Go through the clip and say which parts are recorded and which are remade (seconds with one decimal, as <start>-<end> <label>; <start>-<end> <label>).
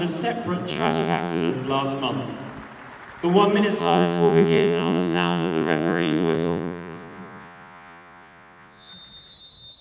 0.0-0.7 recorded; 0.7-1.5 remade; 1.5-3.8 recorded; 3.8-8.9 remade; 8.9-9.8 recorded